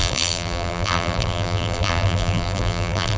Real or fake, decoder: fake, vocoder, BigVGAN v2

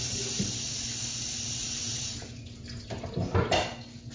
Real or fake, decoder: real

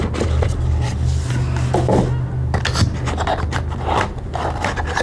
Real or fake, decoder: real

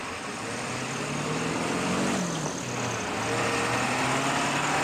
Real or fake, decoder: real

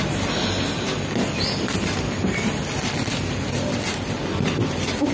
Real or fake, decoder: real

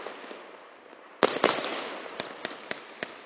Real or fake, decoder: real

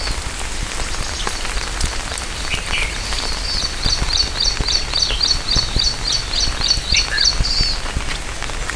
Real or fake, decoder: real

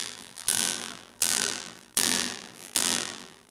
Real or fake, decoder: fake, vocoder, BigVGAN v2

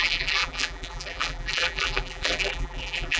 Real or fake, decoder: fake, vocoder, BigVGAN v2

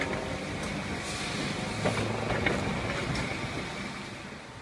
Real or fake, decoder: real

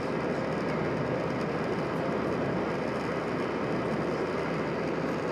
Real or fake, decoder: real